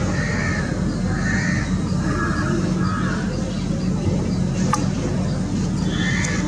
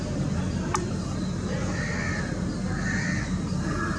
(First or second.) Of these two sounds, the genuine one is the first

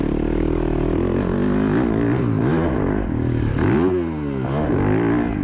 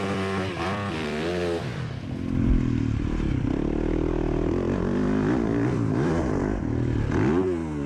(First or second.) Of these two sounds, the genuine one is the first